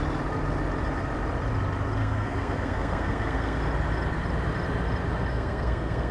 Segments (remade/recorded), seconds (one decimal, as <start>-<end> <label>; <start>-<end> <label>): 0.0-2.0 recorded; 2.0-3.6 remade; 3.6-5.3 recorded; 5.3-6.1 remade